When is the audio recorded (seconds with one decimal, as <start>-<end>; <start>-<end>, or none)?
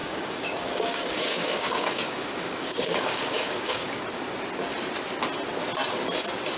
4.0-6.6